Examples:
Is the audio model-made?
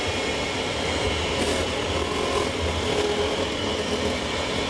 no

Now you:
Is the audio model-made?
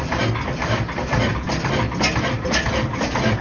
no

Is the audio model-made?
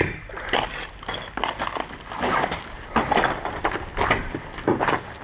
no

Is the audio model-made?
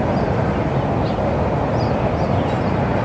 no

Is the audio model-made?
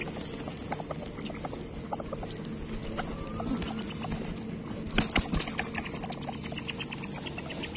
no